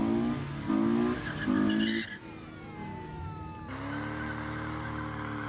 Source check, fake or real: real